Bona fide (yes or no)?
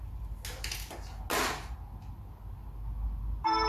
yes